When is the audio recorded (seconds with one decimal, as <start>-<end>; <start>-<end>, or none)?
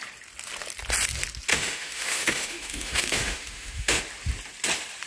0.0-1.5; 4.0-5.1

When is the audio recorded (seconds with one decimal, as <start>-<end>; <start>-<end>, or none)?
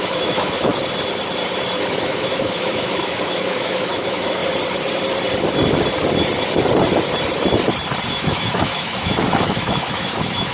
0.7-1.8; 4.4-8.1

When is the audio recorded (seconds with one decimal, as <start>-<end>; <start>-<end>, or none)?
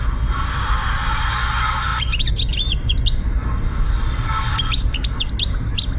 0.0-6.0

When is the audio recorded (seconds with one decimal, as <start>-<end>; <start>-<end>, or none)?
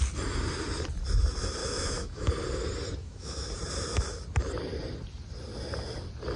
0.0-1.6; 2.3-3.0; 3.5-6.4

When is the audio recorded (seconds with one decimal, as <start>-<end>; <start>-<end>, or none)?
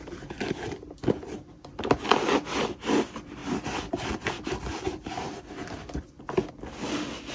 0.0-7.3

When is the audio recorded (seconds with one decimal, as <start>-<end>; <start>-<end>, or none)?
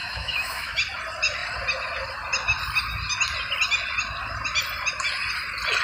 0.8-5.8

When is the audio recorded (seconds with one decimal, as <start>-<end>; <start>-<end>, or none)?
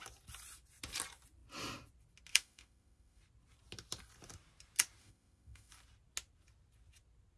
0.0-2.3; 3.2-5.0; 5.7-7.4